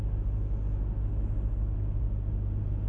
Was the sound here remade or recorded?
recorded